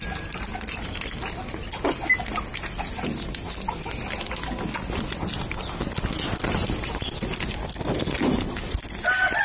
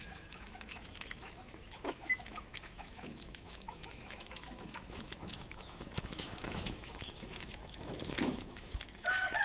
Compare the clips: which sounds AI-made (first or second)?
second